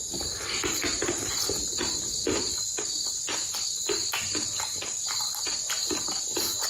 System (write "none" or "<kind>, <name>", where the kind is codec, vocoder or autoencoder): none